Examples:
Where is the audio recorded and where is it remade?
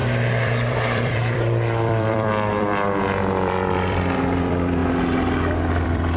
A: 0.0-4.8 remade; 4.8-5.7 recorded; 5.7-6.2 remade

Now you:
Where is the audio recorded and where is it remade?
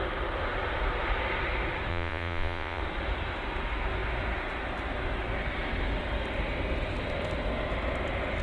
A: 0.0-1.9 recorded; 1.9-2.8 remade; 2.8-8.4 recorded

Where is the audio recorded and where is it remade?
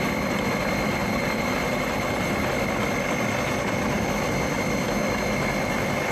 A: 0.0-1.0 recorded; 1.0-2.5 remade; 2.5-6.1 recorded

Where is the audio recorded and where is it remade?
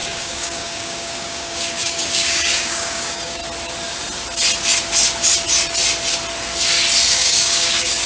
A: 0.0-3.4 remade; 3.4-7.1 recorded; 7.1-8.1 remade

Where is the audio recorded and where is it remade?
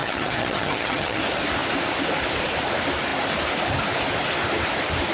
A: 0.0-1.2 remade; 1.2-5.1 recorded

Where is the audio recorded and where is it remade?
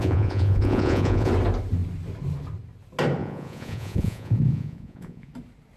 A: 0.0-1.3 remade; 1.3-3.2 recorded; 3.2-5.3 remade; 5.3-5.8 recorded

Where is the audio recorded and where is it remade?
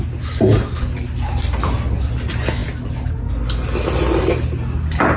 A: 0.0-5.2 recorded